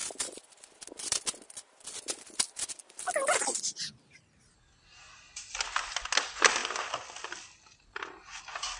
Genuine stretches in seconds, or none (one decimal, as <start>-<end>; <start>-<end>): 4.1-6.6; 8.4-8.8